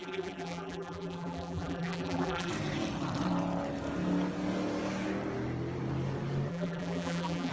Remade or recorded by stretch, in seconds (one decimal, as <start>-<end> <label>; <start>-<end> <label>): 0.0-2.5 remade; 2.5-6.5 recorded; 6.5-7.5 remade